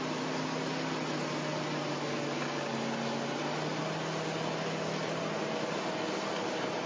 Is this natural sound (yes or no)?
yes